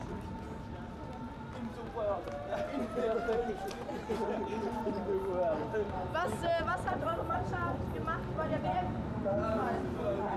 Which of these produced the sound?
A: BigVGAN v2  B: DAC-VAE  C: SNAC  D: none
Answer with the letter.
D